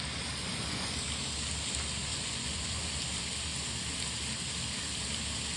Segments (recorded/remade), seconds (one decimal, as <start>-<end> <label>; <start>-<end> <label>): 0.0-0.4 recorded; 0.4-1.0 remade; 1.0-2.1 recorded; 2.1-3.0 remade; 3.0-5.6 recorded